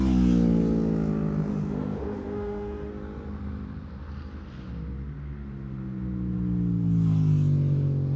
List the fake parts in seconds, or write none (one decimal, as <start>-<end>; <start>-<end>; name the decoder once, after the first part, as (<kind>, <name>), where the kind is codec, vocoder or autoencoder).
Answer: 1.5-2.9 (autoencoder, DAC-VAE)